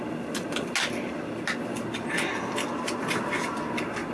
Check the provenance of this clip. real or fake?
real